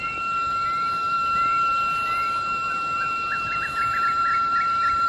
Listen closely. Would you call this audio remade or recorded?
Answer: recorded